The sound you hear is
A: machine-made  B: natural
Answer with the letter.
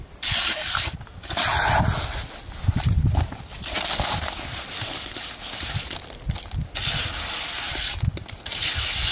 B